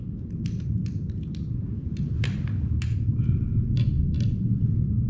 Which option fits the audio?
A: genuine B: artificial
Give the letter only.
A